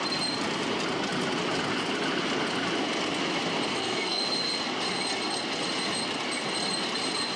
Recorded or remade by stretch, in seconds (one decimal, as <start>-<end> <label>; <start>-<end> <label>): 0.0-3.7 recorded; 3.7-4.2 remade; 4.2-7.4 recorded